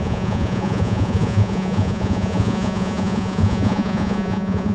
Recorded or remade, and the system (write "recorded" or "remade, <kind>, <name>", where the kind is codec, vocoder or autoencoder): remade, vocoder, Vocos